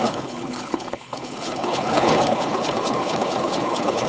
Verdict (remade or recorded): remade